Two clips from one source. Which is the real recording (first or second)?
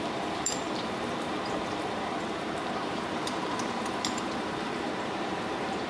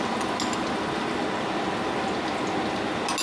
second